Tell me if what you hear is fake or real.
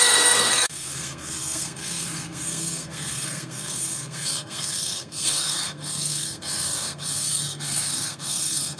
fake